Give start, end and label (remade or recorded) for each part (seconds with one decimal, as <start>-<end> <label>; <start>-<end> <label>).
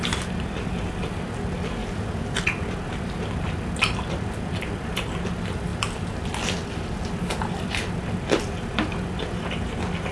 0.0-1.8 remade; 1.8-4.9 recorded; 4.9-10.1 remade